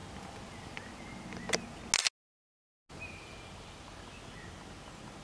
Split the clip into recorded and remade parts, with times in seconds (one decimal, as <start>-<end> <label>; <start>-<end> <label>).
0.0-5.2 recorded